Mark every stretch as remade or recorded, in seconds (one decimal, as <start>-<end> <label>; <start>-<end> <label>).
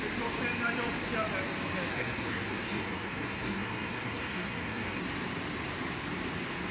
0.0-1.9 recorded; 1.9-5.0 remade; 5.0-6.7 recorded